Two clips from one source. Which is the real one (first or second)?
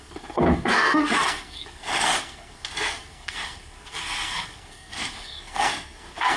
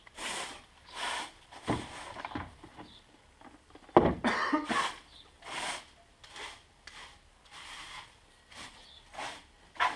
second